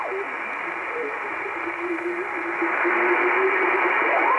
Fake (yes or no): no